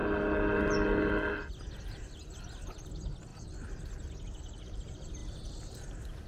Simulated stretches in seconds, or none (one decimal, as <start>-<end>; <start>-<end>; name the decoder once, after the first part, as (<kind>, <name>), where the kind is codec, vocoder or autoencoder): 3.3-4.4 (vocoder, BigVGAN v2)